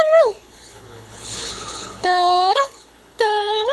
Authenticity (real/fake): fake